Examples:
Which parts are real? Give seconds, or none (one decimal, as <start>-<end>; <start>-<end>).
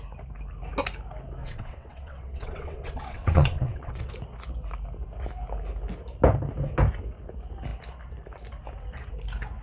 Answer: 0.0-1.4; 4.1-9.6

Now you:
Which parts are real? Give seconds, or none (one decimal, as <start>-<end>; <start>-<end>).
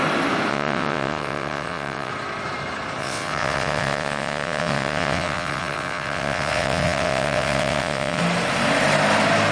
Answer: 0.0-0.5; 2.1-3.0; 8.2-9.5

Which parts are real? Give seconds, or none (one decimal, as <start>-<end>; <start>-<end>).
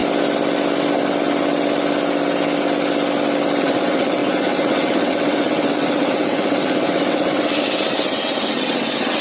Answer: 0.0-3.6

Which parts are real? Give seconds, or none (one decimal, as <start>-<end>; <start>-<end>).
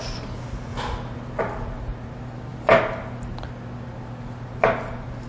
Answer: 0.0-5.3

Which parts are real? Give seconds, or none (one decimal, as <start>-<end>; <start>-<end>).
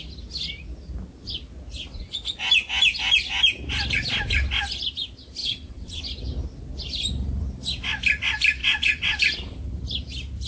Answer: 0.0-5.4; 6.0-8.6; 9.2-10.5